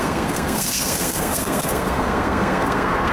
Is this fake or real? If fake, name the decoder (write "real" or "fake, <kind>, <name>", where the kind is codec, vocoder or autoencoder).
fake, codec, SNAC